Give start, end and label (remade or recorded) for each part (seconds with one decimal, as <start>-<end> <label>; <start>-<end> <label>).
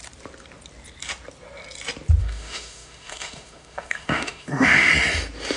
0.0-2.2 recorded; 2.2-4.9 remade; 4.9-5.6 recorded